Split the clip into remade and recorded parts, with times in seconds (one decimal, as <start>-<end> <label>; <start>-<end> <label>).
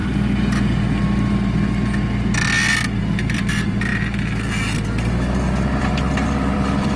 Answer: 0.0-3.0 recorded; 3.0-3.9 remade; 3.9-5.8 recorded; 5.8-7.0 remade